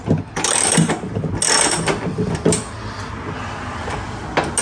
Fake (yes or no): no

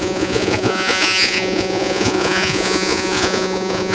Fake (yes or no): yes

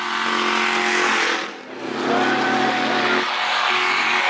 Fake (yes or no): no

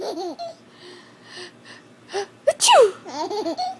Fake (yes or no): no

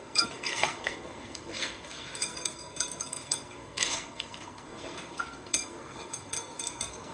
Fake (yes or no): yes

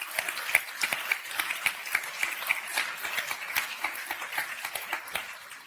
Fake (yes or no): no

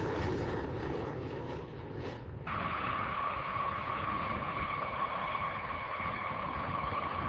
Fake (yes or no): yes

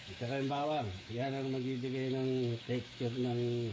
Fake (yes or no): yes